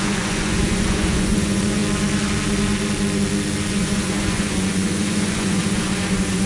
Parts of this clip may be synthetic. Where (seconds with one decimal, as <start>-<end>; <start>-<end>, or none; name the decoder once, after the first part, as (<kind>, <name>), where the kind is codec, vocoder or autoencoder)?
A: 0.0-1.8 (vocoder, Vocos); 3.7-6.5